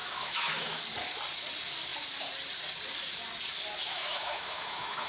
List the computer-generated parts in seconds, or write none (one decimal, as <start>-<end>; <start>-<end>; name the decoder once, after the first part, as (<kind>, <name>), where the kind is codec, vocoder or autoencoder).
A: 0.0-0.8 (autoencoder, DAC-VAE); 3.8-5.1